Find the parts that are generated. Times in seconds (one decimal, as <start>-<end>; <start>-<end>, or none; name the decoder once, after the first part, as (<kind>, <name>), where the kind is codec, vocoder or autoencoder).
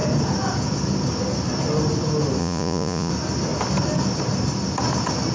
2.4-3.1 (vocoder, Vocos)